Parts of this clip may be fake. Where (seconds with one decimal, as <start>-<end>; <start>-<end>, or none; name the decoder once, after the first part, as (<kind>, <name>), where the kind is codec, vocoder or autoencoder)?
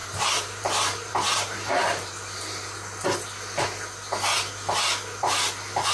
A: 0.0-2.4 (vocoder, BigVGAN v2)